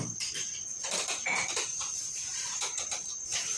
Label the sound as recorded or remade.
remade